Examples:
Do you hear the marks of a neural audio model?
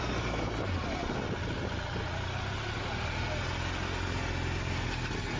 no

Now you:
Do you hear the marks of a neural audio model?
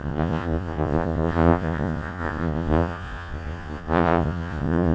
yes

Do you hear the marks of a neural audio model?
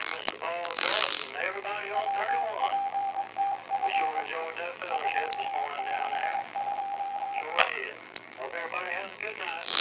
yes